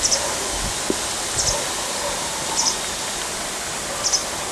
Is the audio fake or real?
real